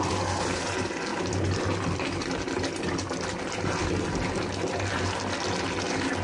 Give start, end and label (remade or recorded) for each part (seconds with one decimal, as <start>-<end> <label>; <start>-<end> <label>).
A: 0.0-6.2 recorded